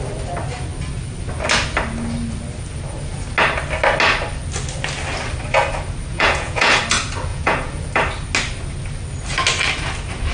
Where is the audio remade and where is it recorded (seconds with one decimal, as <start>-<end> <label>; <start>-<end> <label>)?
0.0-6.1 recorded; 6.1-6.8 remade; 6.8-7.3 recorded; 7.3-7.8 remade; 7.8-10.3 recorded